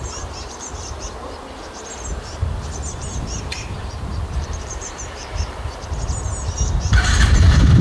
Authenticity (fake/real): fake